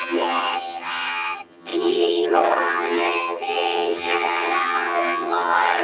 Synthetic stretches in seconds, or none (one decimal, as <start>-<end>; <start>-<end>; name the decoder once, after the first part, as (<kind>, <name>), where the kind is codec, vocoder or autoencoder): 0.0-5.8 (vocoder, HiFi-GAN)